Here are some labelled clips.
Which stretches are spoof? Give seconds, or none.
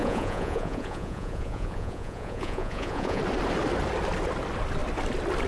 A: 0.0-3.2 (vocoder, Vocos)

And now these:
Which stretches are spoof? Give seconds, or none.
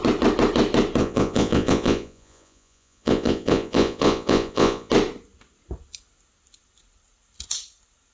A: 1.0-4.9 (vocoder, Vocos)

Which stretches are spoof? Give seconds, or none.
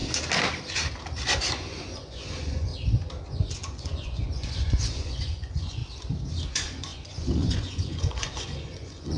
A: 1.5-2.7 (vocoder, Vocos); 3.3-5.8; 6.5-9.2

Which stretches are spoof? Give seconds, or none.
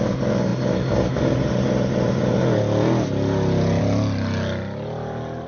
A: none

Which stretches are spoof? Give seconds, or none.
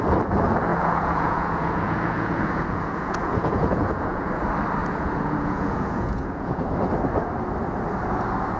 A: 0.7-4.3 (vocoder, Vocos); 4.8-6.6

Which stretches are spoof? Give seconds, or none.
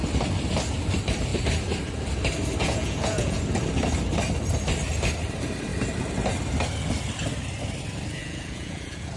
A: 2.6-3.4 (vocoder, Vocos); 8.2-9.2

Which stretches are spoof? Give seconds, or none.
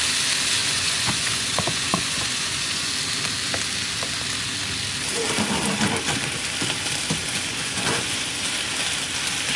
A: 0.6-2.9 (vocoder, Vocos); 7.2-8.3